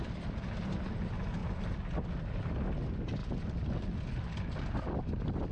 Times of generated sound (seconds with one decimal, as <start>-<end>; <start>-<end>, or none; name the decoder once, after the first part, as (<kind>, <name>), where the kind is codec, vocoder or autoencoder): none